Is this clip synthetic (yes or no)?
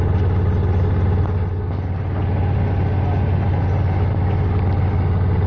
no